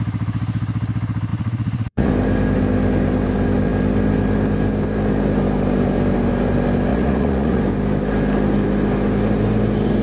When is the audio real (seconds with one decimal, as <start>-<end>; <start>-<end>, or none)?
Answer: 0.0-1.3; 2.1-6.9; 7.6-10.0